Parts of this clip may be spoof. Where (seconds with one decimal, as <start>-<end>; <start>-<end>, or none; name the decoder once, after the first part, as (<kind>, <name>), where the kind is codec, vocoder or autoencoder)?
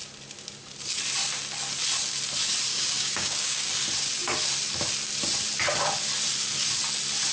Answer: 2.7-3.7 (codec, DAC)